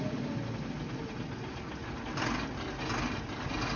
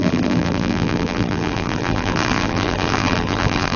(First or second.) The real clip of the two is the first